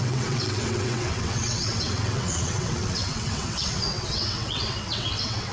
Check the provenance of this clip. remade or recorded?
remade